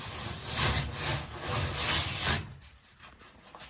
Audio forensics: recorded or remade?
recorded